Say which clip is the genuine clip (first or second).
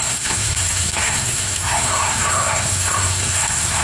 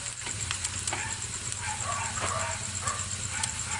second